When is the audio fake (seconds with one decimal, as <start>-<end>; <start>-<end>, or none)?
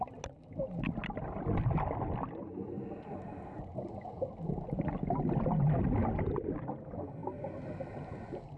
none